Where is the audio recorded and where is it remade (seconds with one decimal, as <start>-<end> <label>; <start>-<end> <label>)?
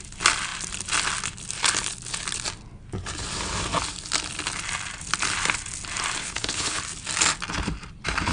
0.0-6.2 recorded; 6.2-6.8 remade; 6.8-8.3 recorded